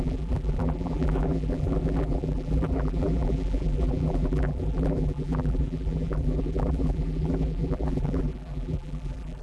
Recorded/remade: remade